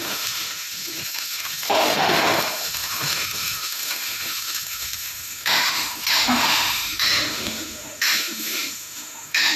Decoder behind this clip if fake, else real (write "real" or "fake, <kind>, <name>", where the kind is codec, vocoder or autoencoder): fake, autoencoder, DAC-VAE